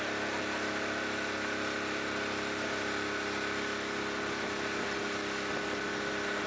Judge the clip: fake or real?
real